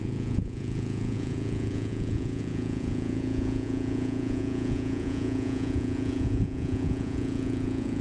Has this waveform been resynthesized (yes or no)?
yes